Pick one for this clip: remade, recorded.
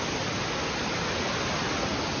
recorded